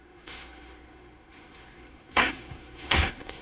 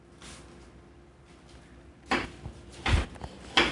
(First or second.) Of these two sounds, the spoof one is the first